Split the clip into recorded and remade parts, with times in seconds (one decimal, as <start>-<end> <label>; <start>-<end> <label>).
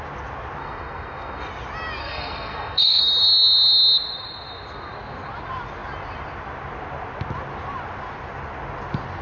0.0-0.6 recorded; 0.6-1.5 remade; 1.5-2.0 recorded; 2.0-3.0 remade; 3.0-9.2 recorded